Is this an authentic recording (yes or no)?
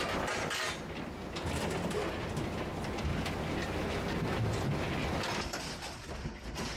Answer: yes